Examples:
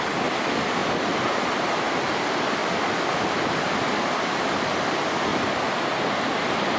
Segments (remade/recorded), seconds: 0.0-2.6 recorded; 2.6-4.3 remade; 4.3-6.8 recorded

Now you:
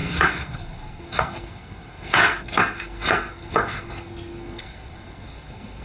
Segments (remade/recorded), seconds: 0.0-5.8 remade

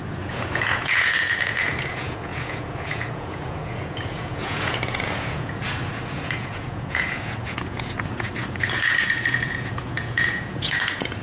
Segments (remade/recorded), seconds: 0.0-11.2 remade

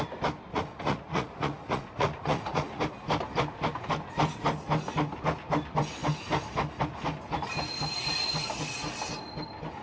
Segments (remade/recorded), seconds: 0.0-0.5 recorded; 0.5-2.8 remade; 2.8-9.8 recorded

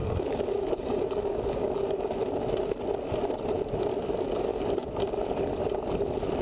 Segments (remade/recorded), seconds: 0.0-1.8 remade; 1.8-6.4 recorded